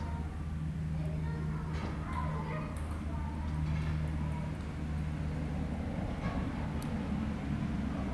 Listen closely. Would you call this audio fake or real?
real